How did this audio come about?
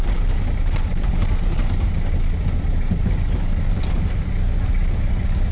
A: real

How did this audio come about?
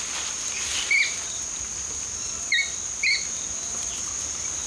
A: real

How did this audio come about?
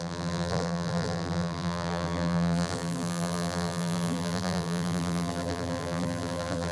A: fake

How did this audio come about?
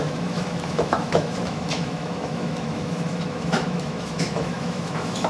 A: fake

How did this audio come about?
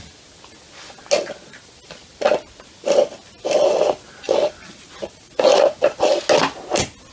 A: real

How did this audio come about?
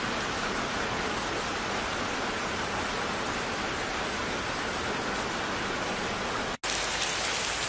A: real